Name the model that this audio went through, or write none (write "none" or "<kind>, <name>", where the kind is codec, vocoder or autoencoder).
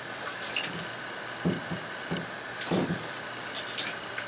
none